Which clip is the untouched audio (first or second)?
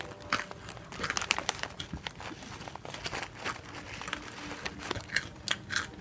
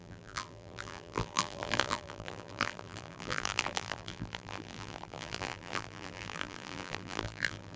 first